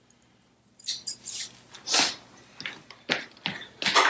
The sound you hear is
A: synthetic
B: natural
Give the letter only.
B